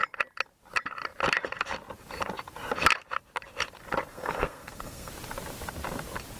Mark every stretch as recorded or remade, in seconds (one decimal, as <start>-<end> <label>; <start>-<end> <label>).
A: 0.0-4.1 recorded; 4.1-5.1 remade; 5.1-6.4 recorded